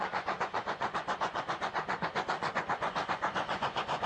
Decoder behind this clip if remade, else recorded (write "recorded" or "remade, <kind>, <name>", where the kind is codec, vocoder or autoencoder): remade, vocoder, Vocos